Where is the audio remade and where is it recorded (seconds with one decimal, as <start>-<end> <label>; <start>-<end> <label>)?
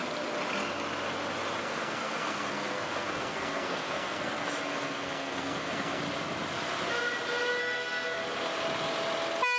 0.0-1.6 recorded; 1.6-6.0 remade; 6.0-7.6 recorded; 7.6-8.2 remade; 8.2-9.6 recorded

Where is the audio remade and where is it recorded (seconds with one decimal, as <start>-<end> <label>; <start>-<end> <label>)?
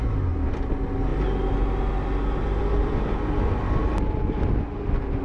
0.0-5.2 recorded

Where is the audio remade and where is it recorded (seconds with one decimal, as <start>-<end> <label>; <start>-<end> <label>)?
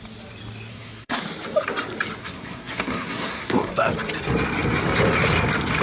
0.0-0.7 recorded; 0.7-1.2 remade; 1.2-2.2 recorded; 2.2-3.9 remade; 3.9-5.8 recorded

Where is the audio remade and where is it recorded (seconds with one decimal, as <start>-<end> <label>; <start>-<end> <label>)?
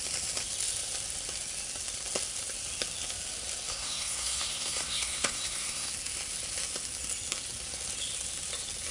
0.0-3.7 recorded; 3.7-5.9 remade; 5.9-8.9 recorded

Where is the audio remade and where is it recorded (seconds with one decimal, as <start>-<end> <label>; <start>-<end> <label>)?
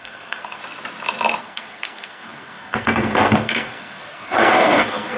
0.0-0.6 remade; 0.6-1.4 recorded; 1.4-5.2 remade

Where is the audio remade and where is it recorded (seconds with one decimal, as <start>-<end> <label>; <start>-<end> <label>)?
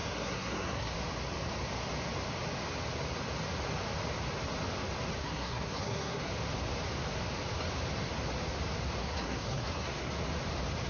0.0-0.9 remade; 0.9-5.2 recorded; 5.2-6.3 remade; 6.3-9.0 recorded; 9.0-10.1 remade; 10.1-10.9 recorded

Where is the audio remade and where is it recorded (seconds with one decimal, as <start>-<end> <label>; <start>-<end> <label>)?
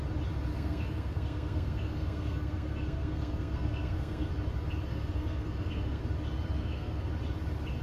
0.0-0.5 recorded; 0.5-4.3 remade; 4.3-4.9 recorded; 4.9-6.0 remade; 6.0-6.6 recorded; 6.6-7.1 remade; 7.1-7.8 recorded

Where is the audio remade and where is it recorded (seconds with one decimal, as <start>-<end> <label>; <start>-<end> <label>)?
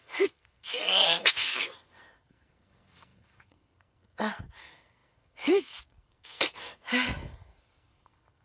0.0-8.4 remade